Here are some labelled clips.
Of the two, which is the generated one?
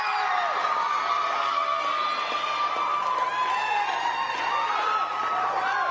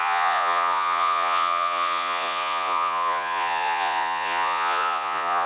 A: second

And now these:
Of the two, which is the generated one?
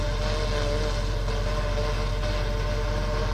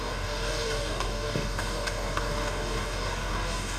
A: second